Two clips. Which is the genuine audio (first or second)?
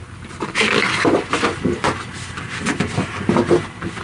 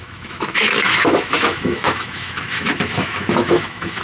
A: first